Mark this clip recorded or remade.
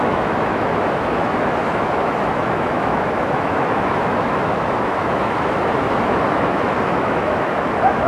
remade